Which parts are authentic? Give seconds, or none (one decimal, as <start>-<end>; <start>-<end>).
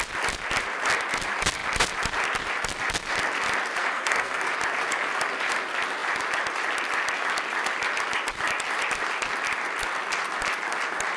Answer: 0.0-3.8; 4.5-11.2